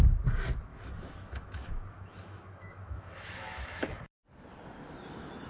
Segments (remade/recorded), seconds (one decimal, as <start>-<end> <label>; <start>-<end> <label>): 0.0-0.7 recorded; 0.7-4.0 remade; 4.0-5.5 recorded